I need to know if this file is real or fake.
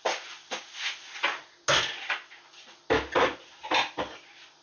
real